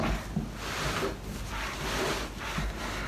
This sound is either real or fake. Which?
real